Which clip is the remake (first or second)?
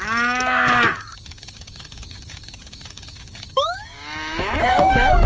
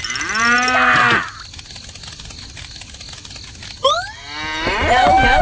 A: first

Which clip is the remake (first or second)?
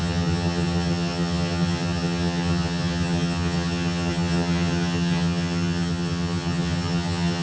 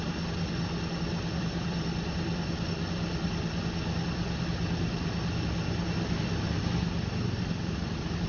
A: first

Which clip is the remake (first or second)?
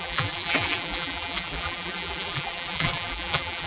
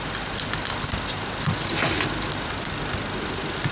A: first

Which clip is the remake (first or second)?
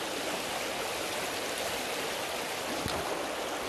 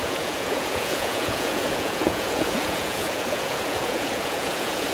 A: second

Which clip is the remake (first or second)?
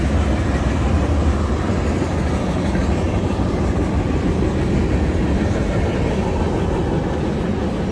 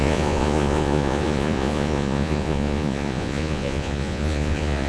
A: second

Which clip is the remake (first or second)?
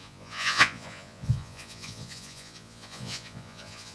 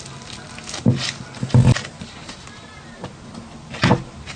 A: first